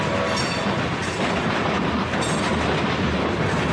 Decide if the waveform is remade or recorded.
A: recorded